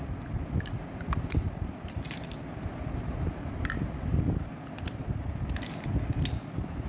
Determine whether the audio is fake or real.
real